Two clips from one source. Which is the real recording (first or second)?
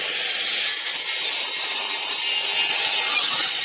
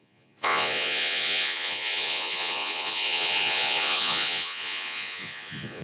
first